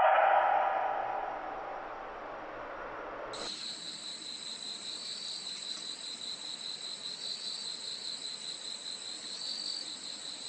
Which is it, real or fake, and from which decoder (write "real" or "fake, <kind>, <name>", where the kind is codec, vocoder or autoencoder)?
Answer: real